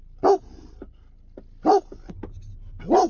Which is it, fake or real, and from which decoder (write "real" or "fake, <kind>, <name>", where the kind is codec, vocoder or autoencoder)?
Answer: real